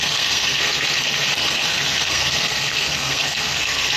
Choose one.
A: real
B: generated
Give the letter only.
B